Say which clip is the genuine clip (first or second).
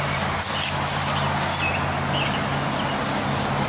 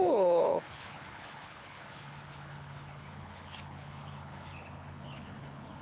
first